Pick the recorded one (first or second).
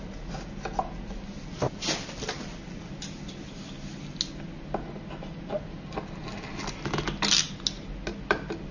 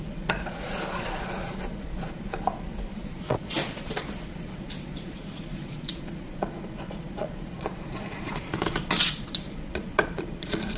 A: first